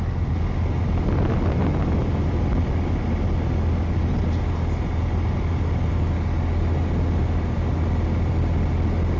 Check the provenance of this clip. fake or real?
real